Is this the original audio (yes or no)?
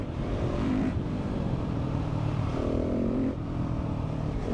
no